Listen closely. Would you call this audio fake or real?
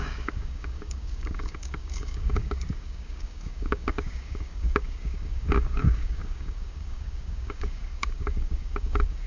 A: fake